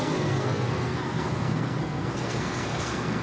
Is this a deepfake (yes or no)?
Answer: yes